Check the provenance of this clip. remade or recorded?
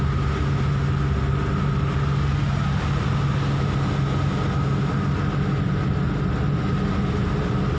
recorded